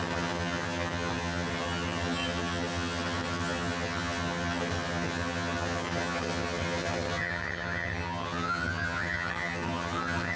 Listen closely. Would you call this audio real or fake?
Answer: fake